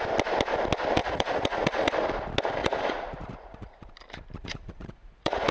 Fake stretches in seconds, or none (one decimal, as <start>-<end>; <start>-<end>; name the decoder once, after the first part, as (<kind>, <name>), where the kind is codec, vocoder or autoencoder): 1.0-1.9 (vocoder, Vocos); 2.6-3.9; 4.4-5.5